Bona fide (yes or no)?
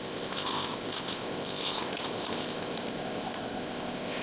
no